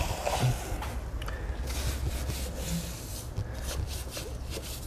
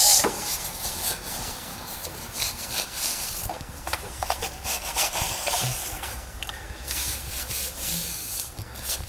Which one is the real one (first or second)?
first